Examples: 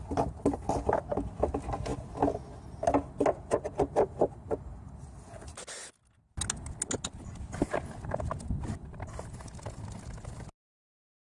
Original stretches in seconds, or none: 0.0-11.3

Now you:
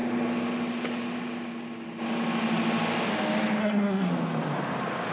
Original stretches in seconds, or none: 0.0-3.6; 4.1-5.1

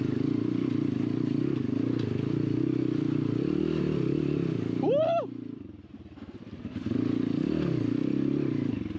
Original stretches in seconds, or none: 0.0-9.0

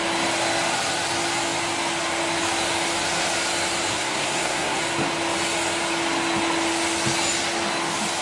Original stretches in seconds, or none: 0.0-3.9; 4.8-8.2

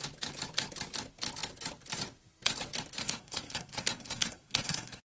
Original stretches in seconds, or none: 0.0-3.0

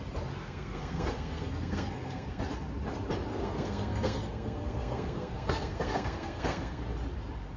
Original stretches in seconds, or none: 0.0-0.4; 2.4-3.3; 6.8-7.6

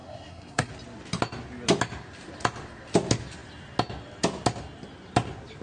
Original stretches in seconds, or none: 0.7-5.6

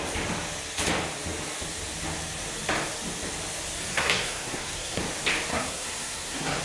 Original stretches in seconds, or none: 0.0-3.9; 5.0-5.5